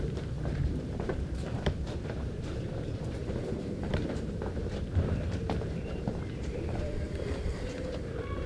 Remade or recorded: remade